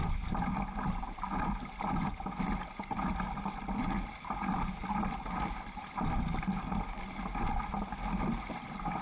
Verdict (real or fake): real